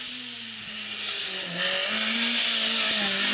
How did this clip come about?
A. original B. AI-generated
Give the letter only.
A